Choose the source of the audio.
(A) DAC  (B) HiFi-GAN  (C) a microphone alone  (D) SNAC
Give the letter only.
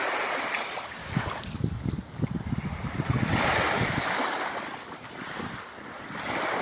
C